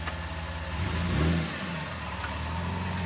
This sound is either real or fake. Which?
real